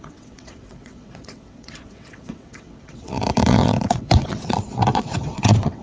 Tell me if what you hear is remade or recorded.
remade